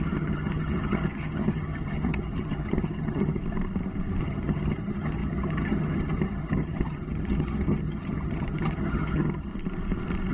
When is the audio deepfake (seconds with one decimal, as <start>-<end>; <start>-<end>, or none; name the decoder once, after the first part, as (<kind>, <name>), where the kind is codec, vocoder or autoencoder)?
0.0-3.4 (vocoder, HiFi-GAN); 4.2-9.5